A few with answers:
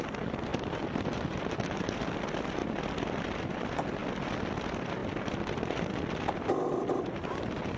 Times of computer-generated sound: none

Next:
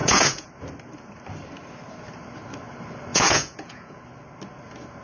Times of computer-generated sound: 0.0-0.5 (vocoder, Vocos); 3.1-4.0

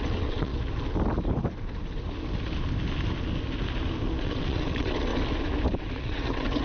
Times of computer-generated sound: 0.0-0.5 (vocoder, WaveNeXt); 4.2-5.1; 5.8-6.6

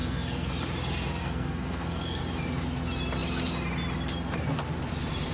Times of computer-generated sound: 0.0-0.5 (codec, SNAC); 1.2-2.2

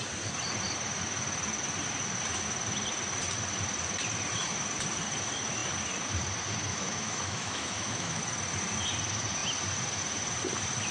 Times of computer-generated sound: 6.7-8.2 (autoencoder, DAC-VAE)

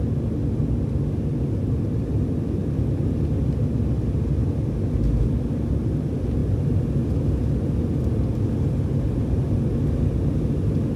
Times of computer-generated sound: none

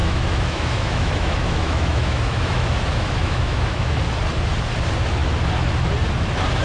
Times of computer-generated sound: 0.0-4.0 (autoencoder, DAC-VAE)

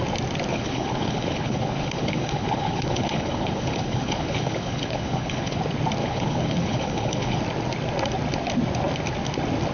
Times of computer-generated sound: 0.5-5.6 (codec, HILCodec); 6.0-7.4